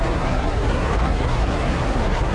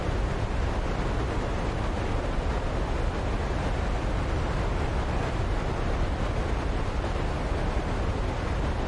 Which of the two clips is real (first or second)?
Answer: second